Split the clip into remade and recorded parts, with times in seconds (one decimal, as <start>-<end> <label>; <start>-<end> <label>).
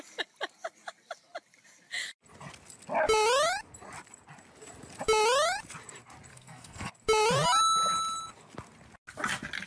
0.0-6.3 recorded; 6.3-6.9 remade; 6.9-9.7 recorded